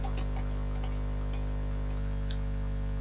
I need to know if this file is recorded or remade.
recorded